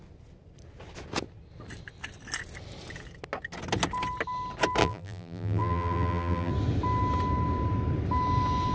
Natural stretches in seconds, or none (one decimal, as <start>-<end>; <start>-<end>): 0.0-4.8; 6.5-8.7